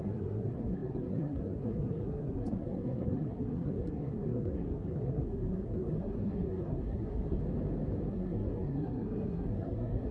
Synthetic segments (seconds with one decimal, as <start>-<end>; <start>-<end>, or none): 0.0-7.4; 8.1-10.1